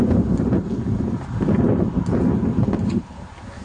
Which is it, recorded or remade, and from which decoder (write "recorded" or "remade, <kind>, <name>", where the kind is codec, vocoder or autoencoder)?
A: recorded